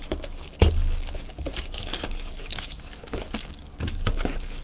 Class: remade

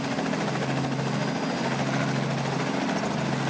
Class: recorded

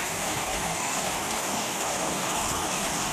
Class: remade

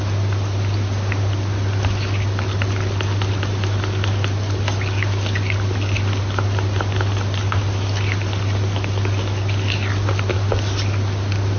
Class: recorded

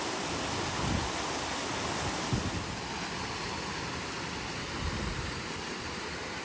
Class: recorded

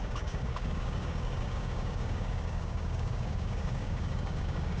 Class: remade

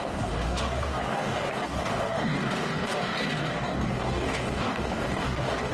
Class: remade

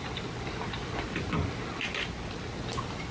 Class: recorded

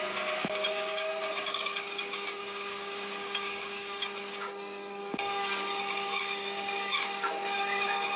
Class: remade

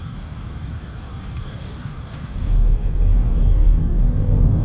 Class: remade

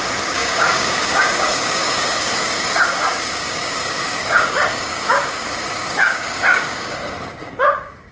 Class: remade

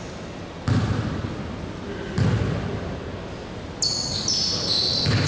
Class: recorded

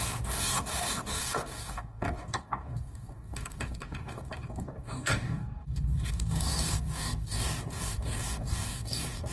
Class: remade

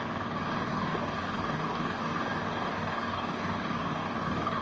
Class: remade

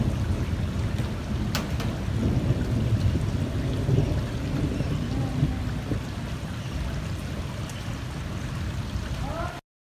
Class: recorded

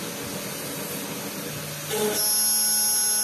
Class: recorded